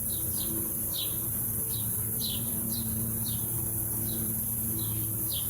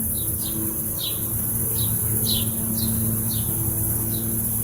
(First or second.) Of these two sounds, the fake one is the first